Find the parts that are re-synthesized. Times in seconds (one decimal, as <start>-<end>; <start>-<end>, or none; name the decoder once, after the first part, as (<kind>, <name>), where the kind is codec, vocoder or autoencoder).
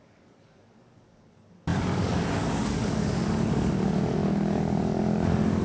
0.0-5.6 (codec, DAC)